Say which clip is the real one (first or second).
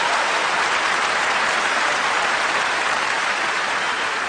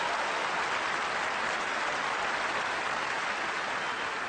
second